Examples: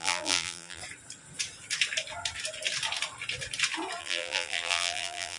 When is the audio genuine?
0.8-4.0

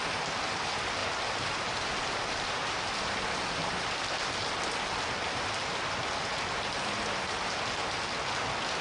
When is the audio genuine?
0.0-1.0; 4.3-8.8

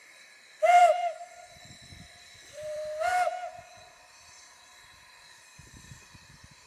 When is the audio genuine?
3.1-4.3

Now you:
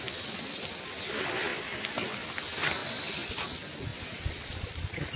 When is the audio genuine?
0.0-5.2